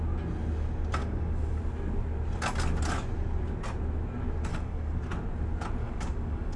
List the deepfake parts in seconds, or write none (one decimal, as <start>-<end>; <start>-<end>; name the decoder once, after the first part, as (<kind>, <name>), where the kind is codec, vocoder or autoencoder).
1.0-1.6 (codec, DAC); 4.5-5.1; 5.8-6.6